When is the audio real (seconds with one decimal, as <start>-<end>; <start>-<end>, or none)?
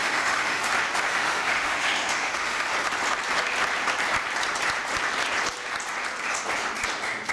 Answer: 0.7-1.1; 2.6-7.3